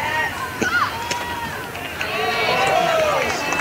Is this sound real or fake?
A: real